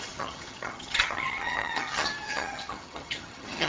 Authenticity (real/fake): fake